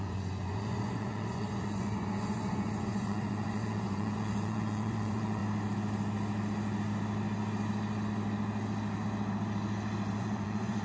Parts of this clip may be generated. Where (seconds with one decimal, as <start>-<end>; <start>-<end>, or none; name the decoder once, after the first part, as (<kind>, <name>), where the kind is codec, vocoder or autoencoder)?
0.0-5.4 (vocoder, Vocos); 10.2-10.8